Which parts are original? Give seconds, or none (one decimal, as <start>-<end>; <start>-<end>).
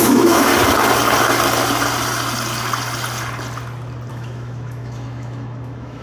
0.5-4.1